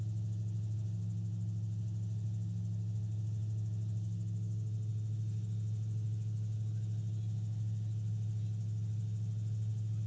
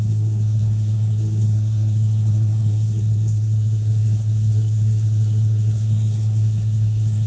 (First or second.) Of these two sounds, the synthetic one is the second